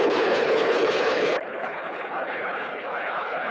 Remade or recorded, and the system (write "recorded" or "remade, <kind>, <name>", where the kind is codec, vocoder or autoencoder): remade, codec, HILCodec